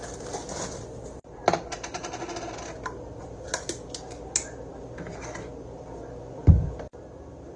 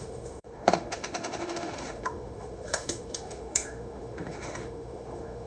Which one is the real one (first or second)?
first